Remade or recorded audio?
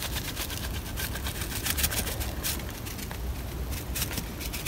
recorded